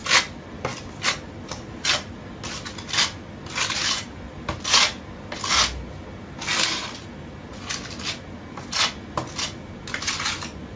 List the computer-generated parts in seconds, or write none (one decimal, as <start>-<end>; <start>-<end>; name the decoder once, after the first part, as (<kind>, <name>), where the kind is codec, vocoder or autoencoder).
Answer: none